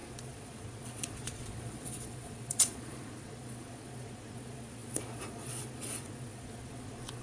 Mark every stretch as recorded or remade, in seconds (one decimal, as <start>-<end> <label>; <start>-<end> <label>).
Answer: 0.0-7.2 remade